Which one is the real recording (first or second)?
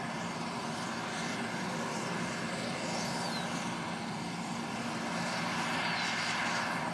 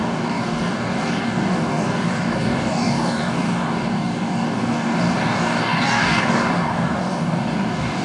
first